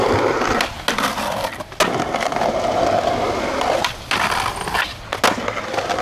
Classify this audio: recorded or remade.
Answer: recorded